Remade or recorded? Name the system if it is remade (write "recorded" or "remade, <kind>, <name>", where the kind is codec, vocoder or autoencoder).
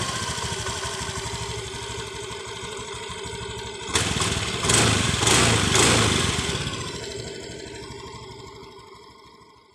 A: recorded